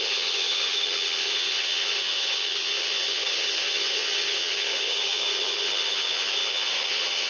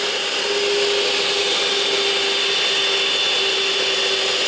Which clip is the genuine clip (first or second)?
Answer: second